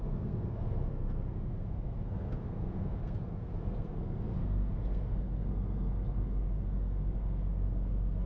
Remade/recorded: remade